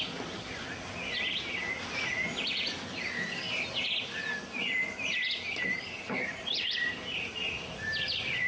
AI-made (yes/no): no